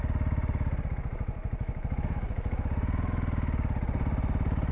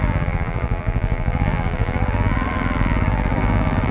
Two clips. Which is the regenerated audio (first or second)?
second